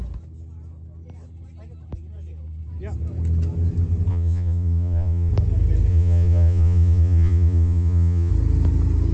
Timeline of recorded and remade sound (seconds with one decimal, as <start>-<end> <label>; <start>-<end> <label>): 0.0-4.1 recorded; 4.1-5.3 remade; 5.3-5.9 recorded; 5.9-8.3 remade; 8.3-9.1 recorded